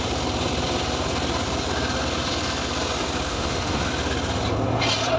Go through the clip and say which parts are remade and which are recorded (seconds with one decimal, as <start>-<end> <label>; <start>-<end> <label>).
0.0-3.3 recorded; 3.3-3.8 remade; 3.8-5.2 recorded